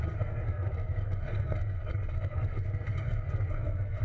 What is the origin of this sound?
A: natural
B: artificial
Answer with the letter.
B